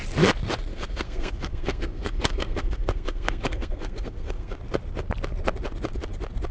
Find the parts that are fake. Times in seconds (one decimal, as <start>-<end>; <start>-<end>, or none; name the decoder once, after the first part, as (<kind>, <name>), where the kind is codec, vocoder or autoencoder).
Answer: 0.7-4.6 (codec, SNAC)